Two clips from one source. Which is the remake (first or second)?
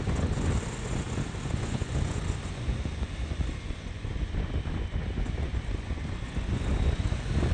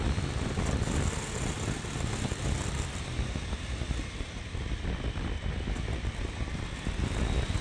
first